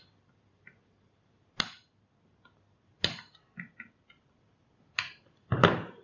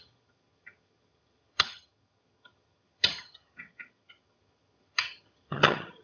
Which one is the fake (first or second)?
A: second